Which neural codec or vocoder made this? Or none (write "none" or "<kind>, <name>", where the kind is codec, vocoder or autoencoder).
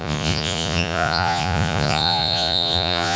vocoder, Vocos